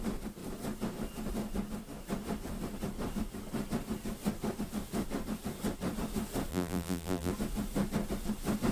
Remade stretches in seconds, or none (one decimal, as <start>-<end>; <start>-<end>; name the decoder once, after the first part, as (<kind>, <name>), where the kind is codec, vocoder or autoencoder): 6.5-7.3 (vocoder, BigVGAN v2)